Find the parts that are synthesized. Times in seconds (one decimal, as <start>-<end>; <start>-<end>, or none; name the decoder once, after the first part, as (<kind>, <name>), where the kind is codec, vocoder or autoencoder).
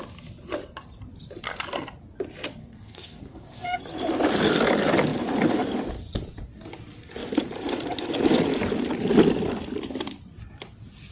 2.6-3.8 (codec, SNAC)